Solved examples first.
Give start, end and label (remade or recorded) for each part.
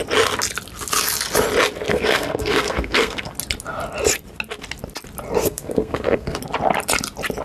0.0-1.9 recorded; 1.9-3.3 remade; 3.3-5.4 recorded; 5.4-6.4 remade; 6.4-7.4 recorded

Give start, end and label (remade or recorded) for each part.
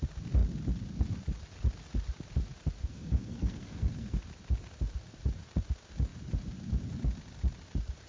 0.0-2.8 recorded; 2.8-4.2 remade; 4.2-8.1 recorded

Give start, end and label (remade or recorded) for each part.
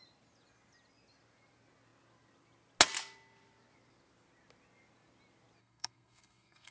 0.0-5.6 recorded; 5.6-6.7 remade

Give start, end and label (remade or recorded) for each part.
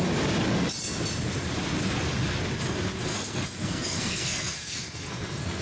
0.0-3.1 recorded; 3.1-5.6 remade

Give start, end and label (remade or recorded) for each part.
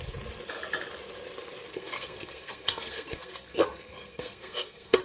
0.0-1.7 recorded; 1.7-5.0 remade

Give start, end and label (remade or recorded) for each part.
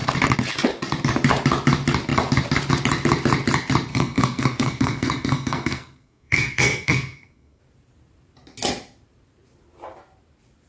0.0-3.9 recorded; 3.9-7.6 remade; 7.6-10.7 recorded